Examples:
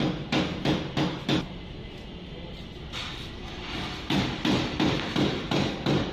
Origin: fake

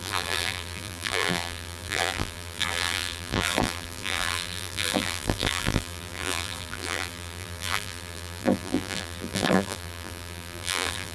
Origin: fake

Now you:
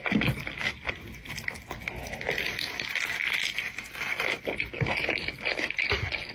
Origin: real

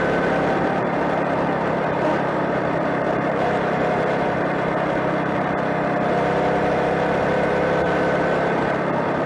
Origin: fake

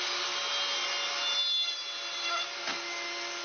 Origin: real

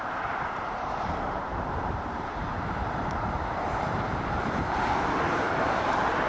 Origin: fake